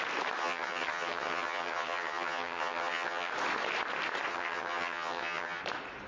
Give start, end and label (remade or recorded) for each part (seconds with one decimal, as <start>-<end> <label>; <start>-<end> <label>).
0.0-0.4 recorded; 0.4-3.3 remade; 3.3-4.3 recorded; 4.3-5.6 remade; 5.6-6.1 recorded